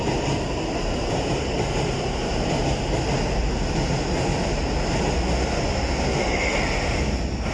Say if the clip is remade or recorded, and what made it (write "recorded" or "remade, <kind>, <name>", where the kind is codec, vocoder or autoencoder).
recorded